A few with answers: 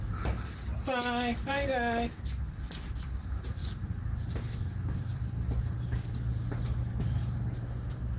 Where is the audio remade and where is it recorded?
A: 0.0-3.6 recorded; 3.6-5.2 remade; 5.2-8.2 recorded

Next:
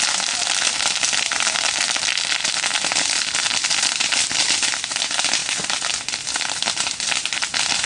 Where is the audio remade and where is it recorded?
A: 0.0-7.9 recorded

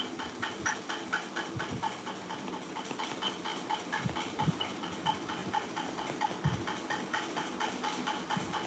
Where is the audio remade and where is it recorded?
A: 0.0-3.5 recorded; 3.5-4.5 remade; 4.5-5.4 recorded; 5.4-5.9 remade; 5.9-8.7 recorded

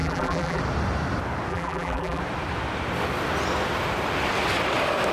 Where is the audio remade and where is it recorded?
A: 0.0-0.6 remade; 0.6-1.5 recorded; 1.5-2.2 remade; 2.2-5.1 recorded

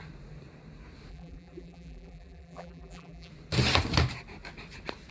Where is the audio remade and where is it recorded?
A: 0.0-1.1 recorded; 1.1-3.3 remade; 3.3-5.1 recorded